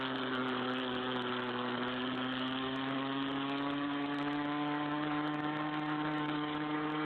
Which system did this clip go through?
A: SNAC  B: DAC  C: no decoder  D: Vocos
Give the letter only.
B